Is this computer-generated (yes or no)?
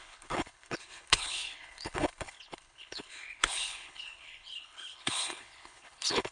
yes